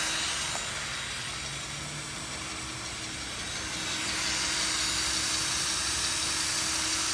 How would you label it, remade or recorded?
recorded